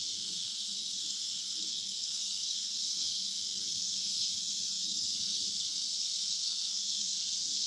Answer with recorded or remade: remade